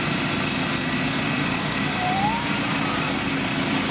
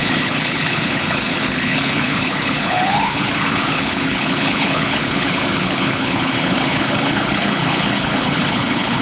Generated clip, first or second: second